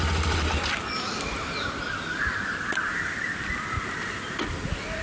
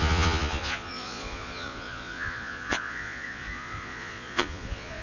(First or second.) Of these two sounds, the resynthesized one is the second